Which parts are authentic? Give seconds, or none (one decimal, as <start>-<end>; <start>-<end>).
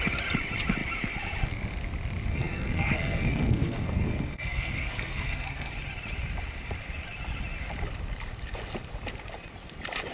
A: 0.0-2.3; 5.7-10.1